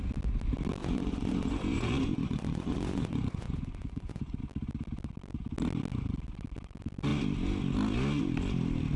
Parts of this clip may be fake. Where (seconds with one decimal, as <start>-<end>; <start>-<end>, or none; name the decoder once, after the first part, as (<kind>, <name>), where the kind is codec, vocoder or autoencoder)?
0.8-4.4 (vocoder, Vocos)